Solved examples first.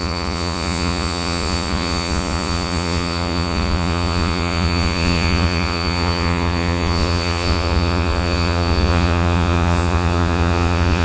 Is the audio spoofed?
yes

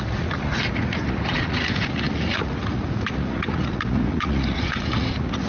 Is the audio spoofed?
yes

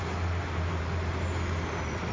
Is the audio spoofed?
no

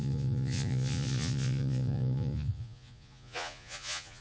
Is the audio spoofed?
yes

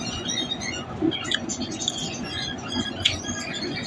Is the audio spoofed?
yes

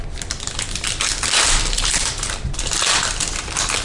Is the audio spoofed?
no